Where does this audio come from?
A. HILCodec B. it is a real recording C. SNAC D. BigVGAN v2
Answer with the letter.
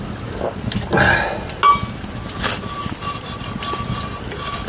B